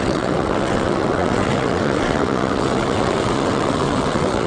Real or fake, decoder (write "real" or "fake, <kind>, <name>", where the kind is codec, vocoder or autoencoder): fake, vocoder, WaveNeXt